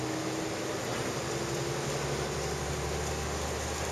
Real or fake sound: real